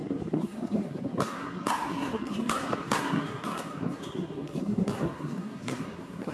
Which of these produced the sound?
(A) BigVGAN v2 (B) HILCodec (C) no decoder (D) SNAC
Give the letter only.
D